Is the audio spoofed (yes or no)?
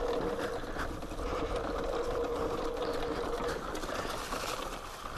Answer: no